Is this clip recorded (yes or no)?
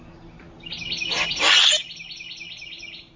yes